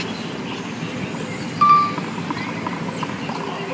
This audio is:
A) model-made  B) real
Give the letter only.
B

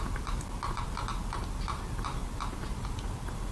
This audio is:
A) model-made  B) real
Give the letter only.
B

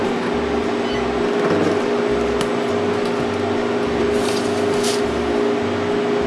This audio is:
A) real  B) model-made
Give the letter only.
A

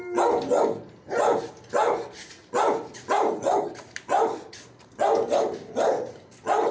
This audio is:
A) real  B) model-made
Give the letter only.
A